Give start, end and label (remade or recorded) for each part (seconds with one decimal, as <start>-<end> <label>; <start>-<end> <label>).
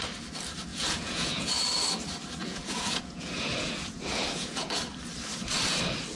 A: 0.0-0.7 recorded; 0.7-1.5 remade; 1.5-2.4 recorded; 2.4-4.7 remade; 4.7-6.2 recorded